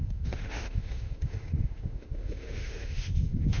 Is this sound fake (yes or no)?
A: yes